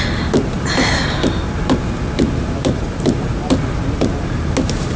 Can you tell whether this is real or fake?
real